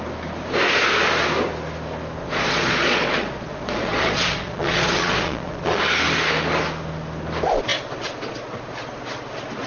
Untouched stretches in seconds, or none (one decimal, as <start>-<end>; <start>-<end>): 0.0-2.2; 5.8-9.7